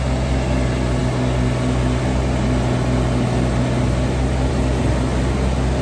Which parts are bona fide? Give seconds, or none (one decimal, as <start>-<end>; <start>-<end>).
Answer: 0.0-5.8